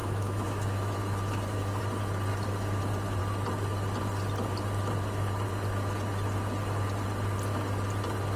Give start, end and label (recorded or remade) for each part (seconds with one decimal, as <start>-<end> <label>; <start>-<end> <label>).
0.0-1.8 remade; 1.8-2.3 recorded; 2.3-2.8 remade; 2.8-8.4 recorded